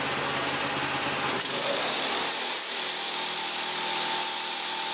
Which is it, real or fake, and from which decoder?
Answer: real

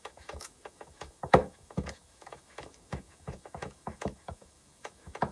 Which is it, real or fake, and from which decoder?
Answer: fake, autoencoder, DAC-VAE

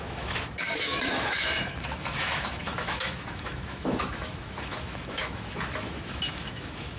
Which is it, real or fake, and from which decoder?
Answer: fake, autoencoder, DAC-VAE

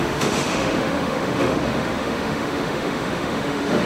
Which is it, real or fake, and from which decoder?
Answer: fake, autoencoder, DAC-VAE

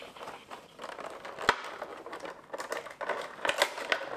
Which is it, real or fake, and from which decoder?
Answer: real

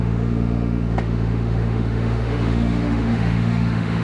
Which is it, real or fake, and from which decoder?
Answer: fake, autoencoder, DAC-VAE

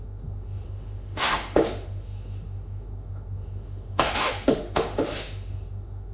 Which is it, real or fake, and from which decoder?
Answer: fake, autoencoder, DAC-VAE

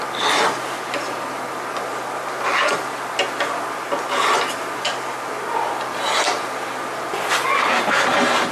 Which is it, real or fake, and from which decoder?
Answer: real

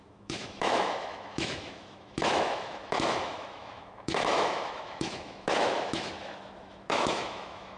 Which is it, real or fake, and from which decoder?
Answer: fake, autoencoder, DAC-VAE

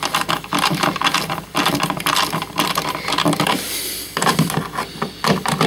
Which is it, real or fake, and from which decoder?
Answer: real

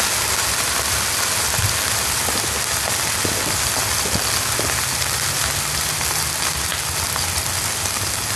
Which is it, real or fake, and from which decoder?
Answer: real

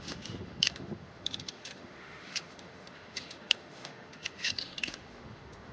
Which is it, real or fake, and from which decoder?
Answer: fake, autoencoder, DAC-VAE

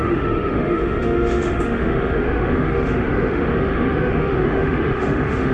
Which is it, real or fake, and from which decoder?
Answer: fake, autoencoder, DAC-VAE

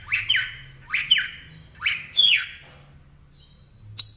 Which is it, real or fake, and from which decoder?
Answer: real